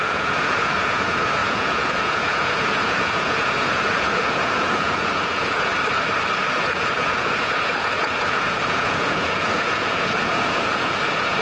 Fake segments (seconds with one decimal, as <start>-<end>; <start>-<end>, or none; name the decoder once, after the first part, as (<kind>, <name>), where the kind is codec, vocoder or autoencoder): 0.0-5.7 (vocoder, Vocos); 6.5-11.4